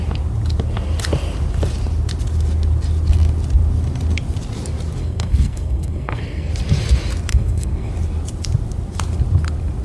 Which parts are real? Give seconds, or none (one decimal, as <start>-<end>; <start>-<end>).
0.0-5.0; 6.5-7.3; 7.9-9.8